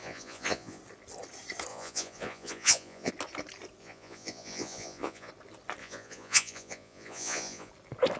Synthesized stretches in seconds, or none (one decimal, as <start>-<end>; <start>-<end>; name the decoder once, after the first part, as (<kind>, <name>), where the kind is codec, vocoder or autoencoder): 0.0-0.8 (vocoder, Vocos); 1.7-3.1; 3.8-5.3; 5.8-7.7